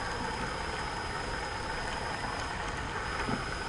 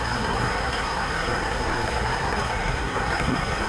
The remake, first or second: second